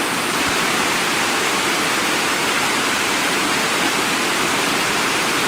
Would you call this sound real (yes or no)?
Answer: no